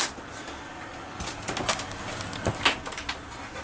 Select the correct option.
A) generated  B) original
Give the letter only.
B